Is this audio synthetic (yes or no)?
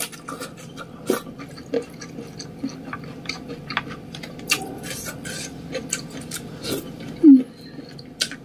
no